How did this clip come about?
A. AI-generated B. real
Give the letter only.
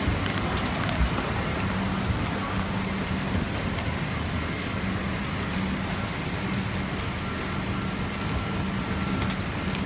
B